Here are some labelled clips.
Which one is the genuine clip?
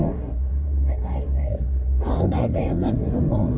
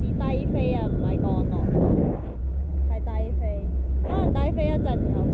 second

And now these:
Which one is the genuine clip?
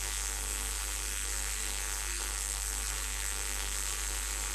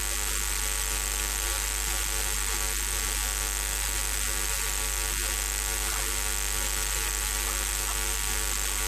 second